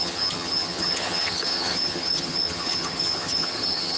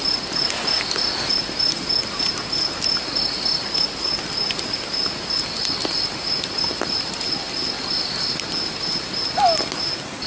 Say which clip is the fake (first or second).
first